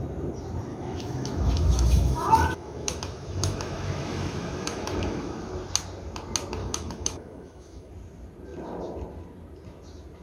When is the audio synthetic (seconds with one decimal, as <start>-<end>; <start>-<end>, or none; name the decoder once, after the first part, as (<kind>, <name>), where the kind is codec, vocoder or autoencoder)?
0.7-5.5 (autoencoder, DAC-VAE); 6.6-7.9